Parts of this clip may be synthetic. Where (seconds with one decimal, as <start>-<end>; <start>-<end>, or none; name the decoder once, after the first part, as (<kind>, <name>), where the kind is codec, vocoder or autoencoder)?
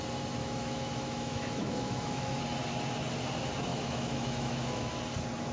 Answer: 0.4-2.4 (autoencoder, DAC-VAE); 3.7-4.9